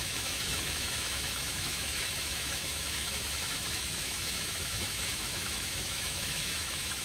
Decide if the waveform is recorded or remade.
remade